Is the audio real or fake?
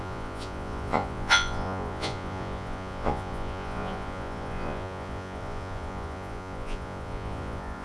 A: fake